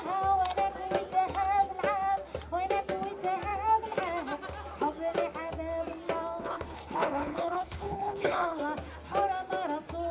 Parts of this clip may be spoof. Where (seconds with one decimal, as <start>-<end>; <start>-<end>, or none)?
6.4-8.6